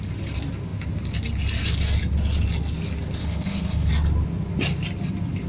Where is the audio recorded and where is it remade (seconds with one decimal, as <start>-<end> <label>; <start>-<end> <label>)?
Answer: 0.0-3.2 recorded; 3.2-3.9 remade; 3.9-5.5 recorded